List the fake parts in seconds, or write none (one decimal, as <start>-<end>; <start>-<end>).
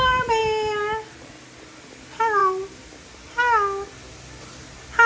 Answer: none